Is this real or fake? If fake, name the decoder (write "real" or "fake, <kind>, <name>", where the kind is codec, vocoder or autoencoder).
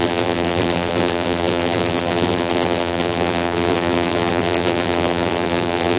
fake, vocoder, BigVGAN v2